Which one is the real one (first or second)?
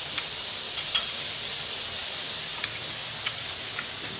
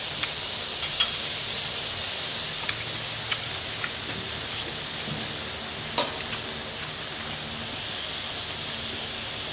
second